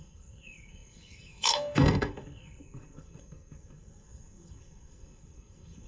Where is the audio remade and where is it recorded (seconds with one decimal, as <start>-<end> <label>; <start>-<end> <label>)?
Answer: 0.0-5.9 remade